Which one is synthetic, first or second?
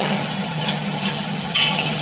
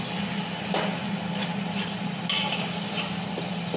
first